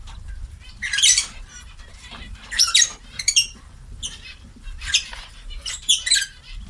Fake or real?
fake